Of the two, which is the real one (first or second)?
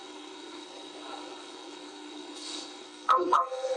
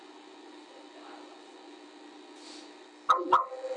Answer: second